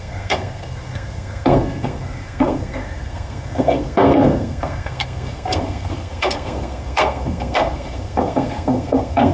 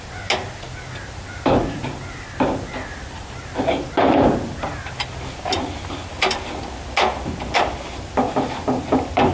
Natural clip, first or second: second